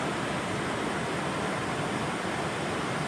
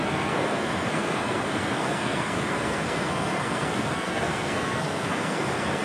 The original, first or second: first